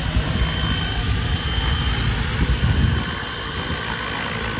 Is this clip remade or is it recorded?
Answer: recorded